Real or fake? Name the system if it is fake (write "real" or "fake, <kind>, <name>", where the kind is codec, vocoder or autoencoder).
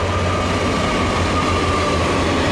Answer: real